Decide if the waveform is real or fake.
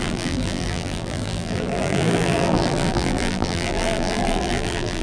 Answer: fake